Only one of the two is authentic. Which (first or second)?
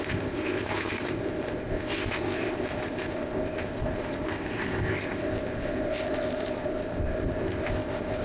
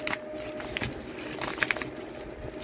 second